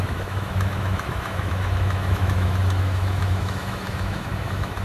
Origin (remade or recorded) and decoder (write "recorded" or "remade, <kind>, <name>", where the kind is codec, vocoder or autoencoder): remade, autoencoder, DAC-VAE